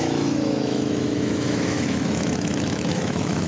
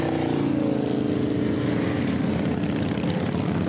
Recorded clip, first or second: second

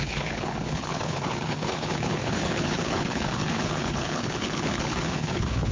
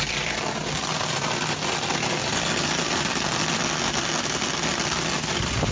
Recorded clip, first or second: second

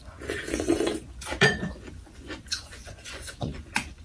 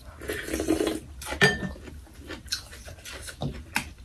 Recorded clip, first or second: second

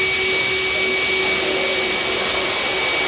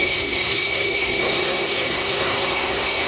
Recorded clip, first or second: first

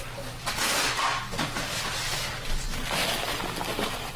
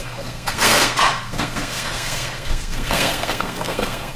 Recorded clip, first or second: first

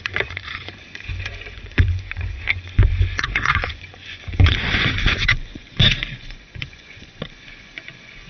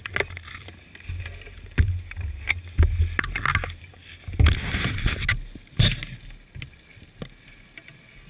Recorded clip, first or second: second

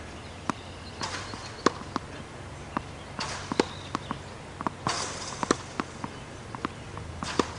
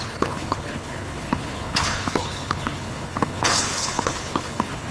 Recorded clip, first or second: first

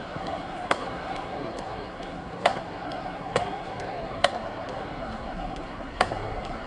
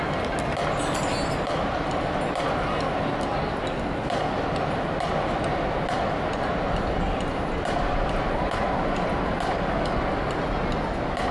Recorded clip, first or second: second